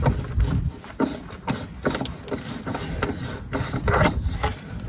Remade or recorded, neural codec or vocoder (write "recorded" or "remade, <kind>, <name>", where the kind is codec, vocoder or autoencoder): recorded